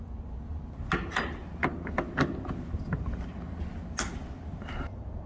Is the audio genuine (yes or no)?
yes